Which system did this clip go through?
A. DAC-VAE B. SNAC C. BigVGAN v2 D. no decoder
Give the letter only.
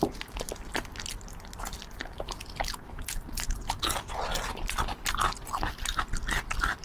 D